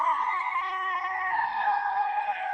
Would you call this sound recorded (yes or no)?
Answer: no